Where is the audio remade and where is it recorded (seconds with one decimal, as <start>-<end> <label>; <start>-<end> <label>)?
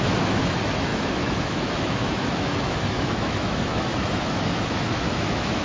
0.0-5.6 remade